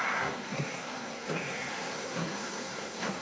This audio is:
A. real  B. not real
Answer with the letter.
B